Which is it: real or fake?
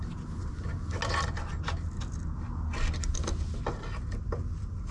real